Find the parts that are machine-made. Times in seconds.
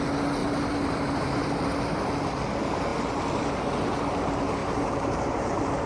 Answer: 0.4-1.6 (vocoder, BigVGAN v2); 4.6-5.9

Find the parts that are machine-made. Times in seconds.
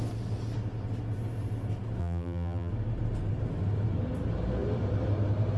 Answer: 2.0-2.7 (vocoder, BigVGAN v2)